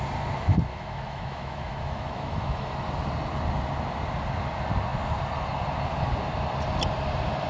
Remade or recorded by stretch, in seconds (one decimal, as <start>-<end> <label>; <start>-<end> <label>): 0.0-0.7 recorded; 0.7-2.7 remade; 2.7-7.5 recorded